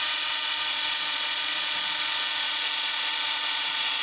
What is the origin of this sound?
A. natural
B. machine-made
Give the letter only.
B